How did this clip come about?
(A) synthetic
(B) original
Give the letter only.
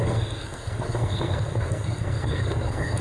A